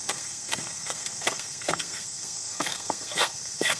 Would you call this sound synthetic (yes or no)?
yes